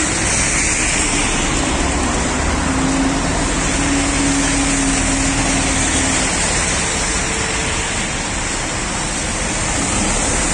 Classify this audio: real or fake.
real